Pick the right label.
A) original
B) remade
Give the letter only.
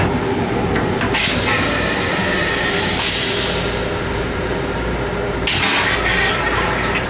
A